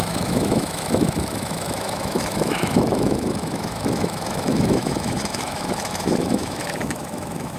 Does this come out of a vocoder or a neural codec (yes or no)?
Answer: yes